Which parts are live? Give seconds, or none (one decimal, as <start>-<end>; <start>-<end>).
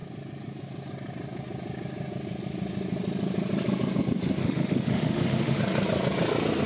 0.0-4.4; 5.6-6.7